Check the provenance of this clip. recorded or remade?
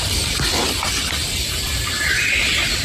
remade